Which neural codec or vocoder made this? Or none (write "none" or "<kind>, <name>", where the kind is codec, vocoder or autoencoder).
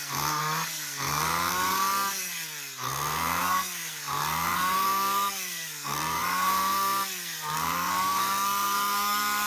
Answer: codec, SNAC